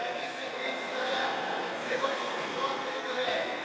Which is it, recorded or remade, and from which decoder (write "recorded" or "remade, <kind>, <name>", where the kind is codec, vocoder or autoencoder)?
remade, codec, SNAC